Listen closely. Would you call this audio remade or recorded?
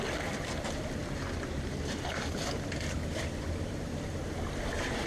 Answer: recorded